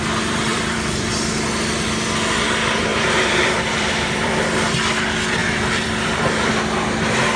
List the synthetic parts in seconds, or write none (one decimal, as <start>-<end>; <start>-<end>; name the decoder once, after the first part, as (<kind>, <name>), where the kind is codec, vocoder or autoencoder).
0.5-1.1 (vocoder, BigVGAN v2); 2.9-4.3; 5.4-6.5